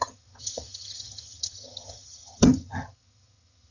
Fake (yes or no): yes